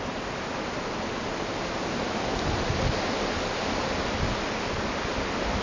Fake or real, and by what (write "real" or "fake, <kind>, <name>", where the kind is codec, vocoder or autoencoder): real